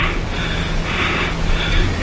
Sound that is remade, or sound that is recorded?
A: recorded